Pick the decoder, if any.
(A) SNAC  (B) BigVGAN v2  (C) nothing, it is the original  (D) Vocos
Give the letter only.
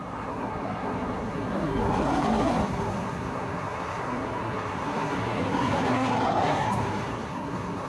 A